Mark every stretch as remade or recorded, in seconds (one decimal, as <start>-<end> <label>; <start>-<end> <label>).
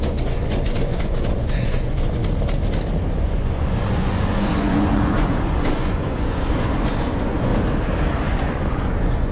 0.0-2.2 remade; 2.2-3.1 recorded; 3.1-7.5 remade; 7.5-8.3 recorded; 8.3-9.3 remade